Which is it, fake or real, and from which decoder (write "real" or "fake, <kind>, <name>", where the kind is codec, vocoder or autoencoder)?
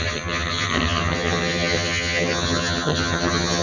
fake, vocoder, HiFi-GAN